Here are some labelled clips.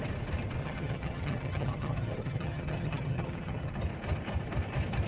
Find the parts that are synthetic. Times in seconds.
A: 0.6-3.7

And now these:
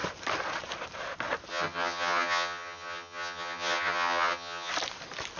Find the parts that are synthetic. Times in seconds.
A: 1.5-4.7

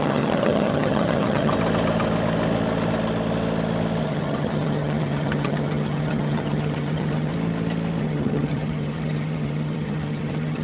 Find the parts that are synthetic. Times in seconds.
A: 0.0-1.5; 4.0-7.3; 8.0-10.6

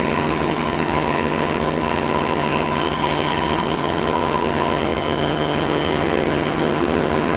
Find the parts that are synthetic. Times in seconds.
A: 0.0-7.4

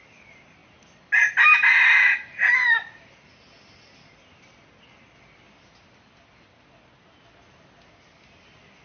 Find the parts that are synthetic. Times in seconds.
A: none

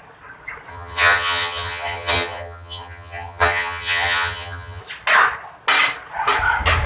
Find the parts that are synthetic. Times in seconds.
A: 0.7-4.8